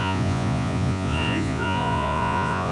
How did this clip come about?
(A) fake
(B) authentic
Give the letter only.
A